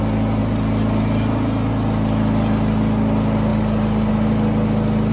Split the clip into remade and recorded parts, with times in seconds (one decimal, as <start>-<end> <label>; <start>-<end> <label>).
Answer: 0.0-5.1 recorded